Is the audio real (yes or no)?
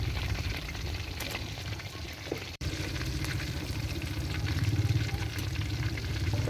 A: no